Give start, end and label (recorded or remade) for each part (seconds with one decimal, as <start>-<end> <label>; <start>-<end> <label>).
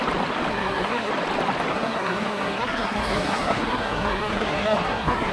0.0-0.5 recorded; 0.5-1.1 remade; 1.1-1.7 recorded; 1.7-5.3 remade